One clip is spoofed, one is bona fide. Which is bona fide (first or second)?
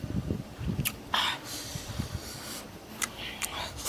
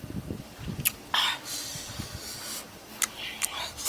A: second